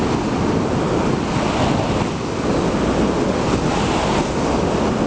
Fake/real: real